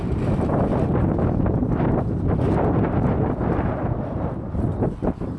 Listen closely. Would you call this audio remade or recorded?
recorded